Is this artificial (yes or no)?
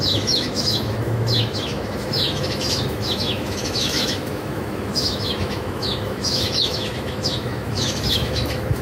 yes